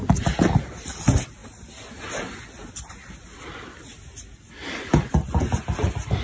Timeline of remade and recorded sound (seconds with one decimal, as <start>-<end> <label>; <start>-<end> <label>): 0.0-6.2 recorded